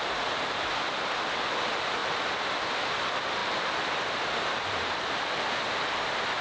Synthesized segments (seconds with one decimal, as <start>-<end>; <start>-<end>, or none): none